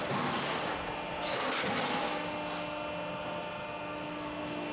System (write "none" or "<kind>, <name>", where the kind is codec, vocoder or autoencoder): none